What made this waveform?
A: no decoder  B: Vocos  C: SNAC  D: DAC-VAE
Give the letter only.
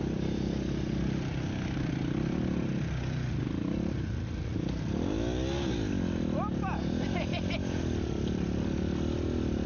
A